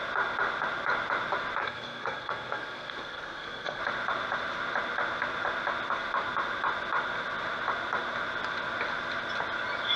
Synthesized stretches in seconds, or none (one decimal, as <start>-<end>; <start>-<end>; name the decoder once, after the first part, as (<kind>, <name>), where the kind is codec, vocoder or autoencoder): 1.6-3.8 (codec, SNAC)